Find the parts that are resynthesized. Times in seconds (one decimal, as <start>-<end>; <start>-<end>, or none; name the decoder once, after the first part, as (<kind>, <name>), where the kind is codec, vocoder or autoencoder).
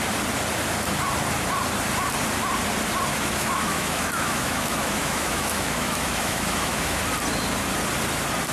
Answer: 3.1-7.0 (autoencoder, DAC-VAE)